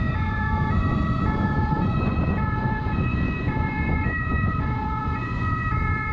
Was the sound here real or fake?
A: fake